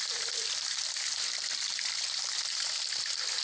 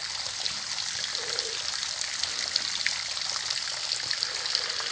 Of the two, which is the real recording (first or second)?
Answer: second